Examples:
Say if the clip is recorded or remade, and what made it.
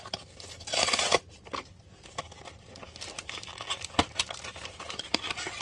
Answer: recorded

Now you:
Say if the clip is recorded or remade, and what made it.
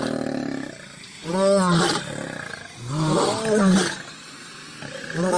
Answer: recorded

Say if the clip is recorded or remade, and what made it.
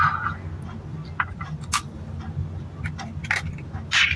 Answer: recorded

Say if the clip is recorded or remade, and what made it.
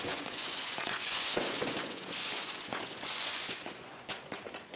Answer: remade, vocoder, Vocos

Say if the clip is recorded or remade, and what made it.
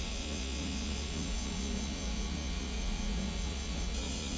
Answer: remade, vocoder, Vocos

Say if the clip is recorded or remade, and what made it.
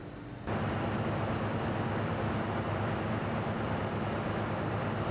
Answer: recorded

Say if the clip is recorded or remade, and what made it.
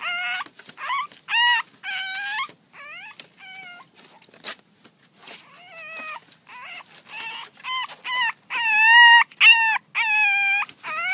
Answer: recorded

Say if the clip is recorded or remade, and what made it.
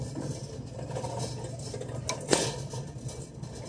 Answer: recorded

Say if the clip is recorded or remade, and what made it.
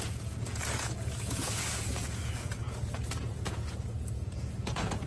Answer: remade, vocoder, Vocos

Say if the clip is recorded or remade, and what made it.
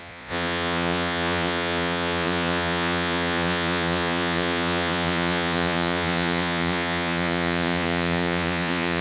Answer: remade, vocoder, Vocos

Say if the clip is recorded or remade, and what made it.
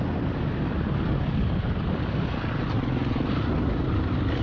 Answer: recorded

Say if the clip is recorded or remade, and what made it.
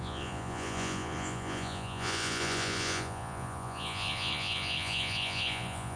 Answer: remade, vocoder, Vocos